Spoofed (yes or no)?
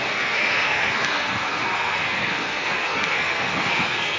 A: yes